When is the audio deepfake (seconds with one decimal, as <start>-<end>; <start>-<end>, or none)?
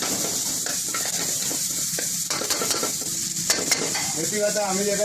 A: 0.0-0.8; 1.3-3.1; 3.8-5.0